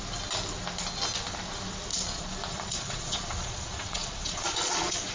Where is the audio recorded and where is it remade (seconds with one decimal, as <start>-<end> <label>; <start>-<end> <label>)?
0.0-1.9 recorded; 1.9-5.1 remade